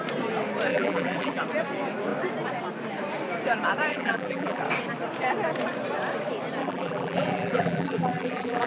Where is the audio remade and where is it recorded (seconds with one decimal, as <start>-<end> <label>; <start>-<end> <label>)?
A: 0.0-0.7 recorded; 0.7-1.4 remade; 1.4-3.9 recorded; 3.9-4.6 remade; 4.6-6.6 recorded; 6.6-8.7 remade